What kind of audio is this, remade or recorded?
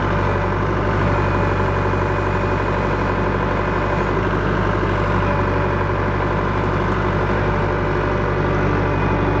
recorded